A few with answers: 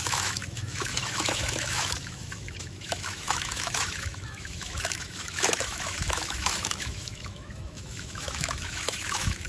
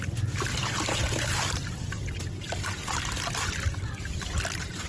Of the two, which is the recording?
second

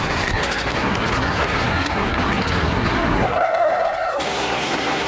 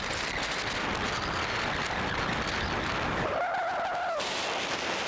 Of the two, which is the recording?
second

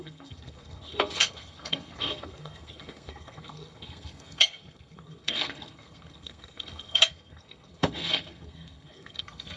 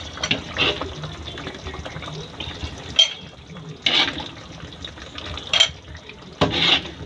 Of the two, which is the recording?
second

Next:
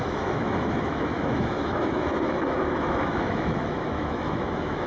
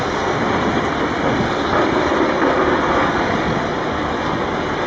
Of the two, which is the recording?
second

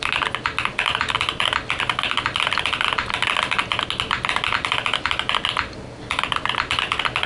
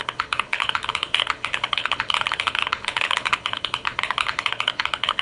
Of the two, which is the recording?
first